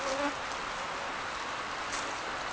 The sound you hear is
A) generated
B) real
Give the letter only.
B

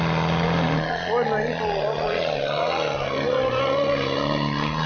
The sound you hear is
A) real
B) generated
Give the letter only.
A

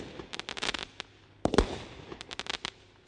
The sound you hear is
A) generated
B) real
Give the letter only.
B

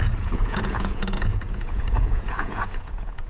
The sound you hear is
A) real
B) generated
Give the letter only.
B